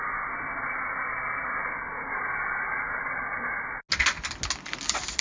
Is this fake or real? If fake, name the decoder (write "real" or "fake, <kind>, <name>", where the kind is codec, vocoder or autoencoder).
real